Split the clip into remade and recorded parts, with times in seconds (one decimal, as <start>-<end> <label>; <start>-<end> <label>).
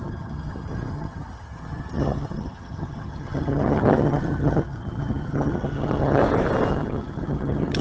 0.0-6.2 remade; 6.2-6.7 recorded; 6.7-7.8 remade